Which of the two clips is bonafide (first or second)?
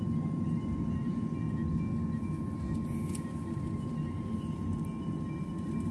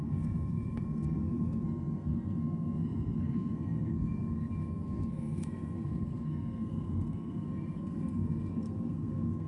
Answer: first